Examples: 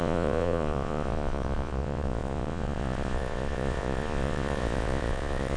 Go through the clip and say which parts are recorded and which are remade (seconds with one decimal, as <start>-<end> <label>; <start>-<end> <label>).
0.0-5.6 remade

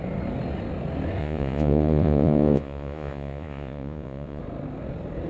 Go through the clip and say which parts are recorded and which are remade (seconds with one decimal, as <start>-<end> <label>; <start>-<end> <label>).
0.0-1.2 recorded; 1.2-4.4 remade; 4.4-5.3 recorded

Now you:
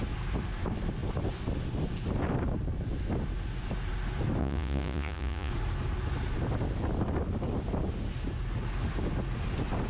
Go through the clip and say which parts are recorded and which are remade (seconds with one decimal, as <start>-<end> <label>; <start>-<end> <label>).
0.0-4.4 recorded; 4.4-5.5 remade; 5.5-9.9 recorded

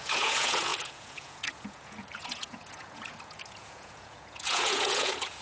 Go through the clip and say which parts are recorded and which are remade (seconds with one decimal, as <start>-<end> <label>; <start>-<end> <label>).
0.0-5.4 remade